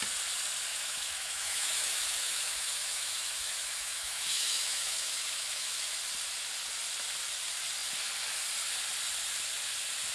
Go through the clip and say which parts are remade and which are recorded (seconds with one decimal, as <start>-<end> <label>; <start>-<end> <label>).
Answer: 0.0-0.7 recorded; 0.7-5.9 remade; 5.9-10.1 recorded